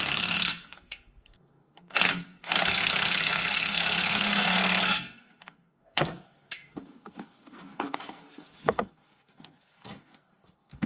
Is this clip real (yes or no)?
no